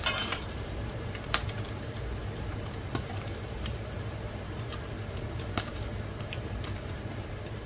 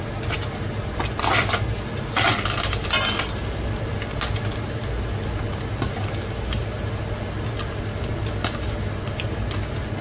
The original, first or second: second